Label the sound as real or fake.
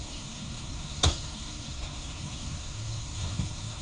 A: fake